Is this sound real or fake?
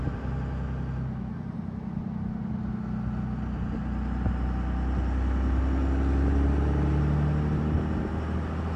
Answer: real